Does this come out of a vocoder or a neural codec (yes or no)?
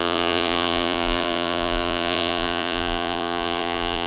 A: yes